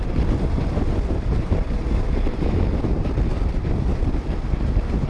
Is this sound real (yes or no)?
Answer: no